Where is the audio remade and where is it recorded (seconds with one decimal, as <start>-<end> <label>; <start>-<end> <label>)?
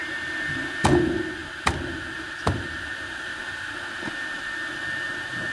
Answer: 0.0-5.5 recorded